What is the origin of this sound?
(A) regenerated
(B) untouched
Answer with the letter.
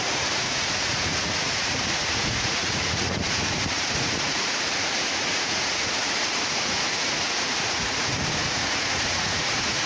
A